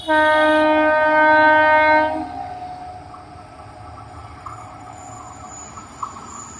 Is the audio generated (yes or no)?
no